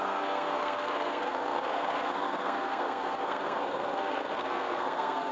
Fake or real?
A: fake